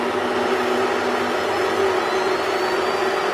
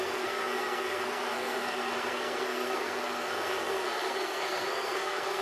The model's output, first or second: second